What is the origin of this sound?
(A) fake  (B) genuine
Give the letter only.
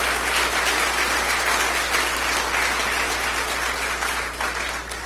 B